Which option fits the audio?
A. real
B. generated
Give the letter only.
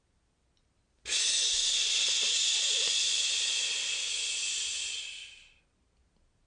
A